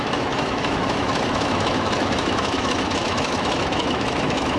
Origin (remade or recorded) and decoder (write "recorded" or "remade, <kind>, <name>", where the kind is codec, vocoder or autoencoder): remade, autoencoder, DAC-VAE